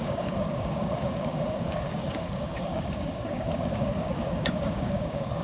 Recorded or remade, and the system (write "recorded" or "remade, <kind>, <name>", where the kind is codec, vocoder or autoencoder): remade, codec, DAC